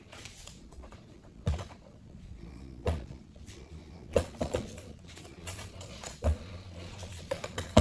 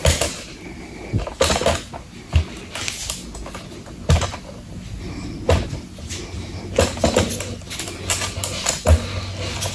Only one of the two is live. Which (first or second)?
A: second